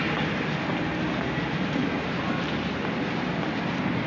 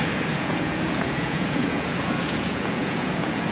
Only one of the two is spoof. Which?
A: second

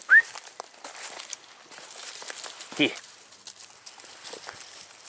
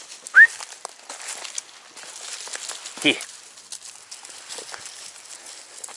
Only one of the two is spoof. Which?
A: first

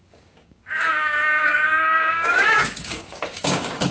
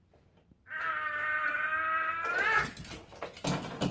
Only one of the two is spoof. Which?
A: first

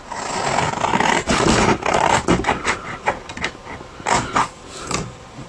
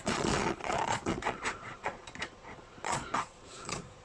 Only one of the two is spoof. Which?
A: second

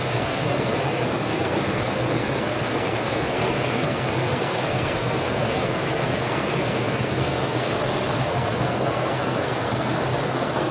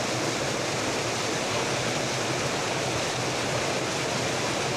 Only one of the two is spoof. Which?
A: first